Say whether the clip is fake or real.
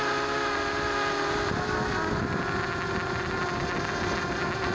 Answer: real